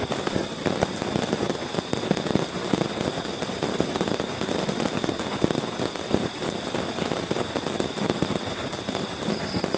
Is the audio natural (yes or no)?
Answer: no